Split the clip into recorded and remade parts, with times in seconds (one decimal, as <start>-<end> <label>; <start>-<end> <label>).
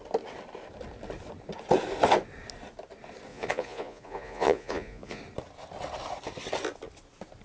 0.0-3.3 recorded; 3.3-5.2 remade; 5.2-7.4 recorded